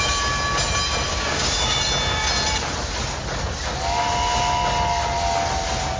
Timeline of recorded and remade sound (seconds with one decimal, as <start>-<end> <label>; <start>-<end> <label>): 0.0-1.1 recorded; 1.1-1.8 remade; 1.8-6.0 recorded